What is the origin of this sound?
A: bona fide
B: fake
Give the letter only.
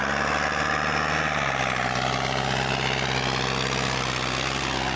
A